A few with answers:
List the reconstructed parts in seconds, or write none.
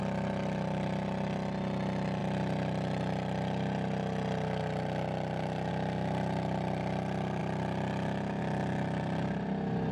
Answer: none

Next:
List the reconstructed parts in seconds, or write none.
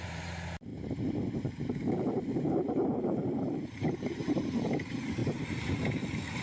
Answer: 0.0-0.7 (vocoder, BigVGAN v2); 1.4-5.2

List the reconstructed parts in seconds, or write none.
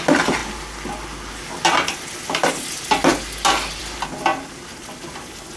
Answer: none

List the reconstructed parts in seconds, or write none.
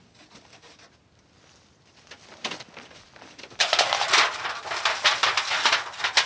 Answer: 3.6-4.2 (vocoder, BigVGAN v2)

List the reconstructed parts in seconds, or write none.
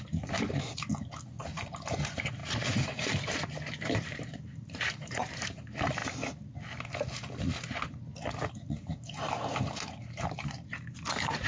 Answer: 0.0-0.9 (vocoder, BigVGAN v2); 1.4-6.0; 8.5-11.5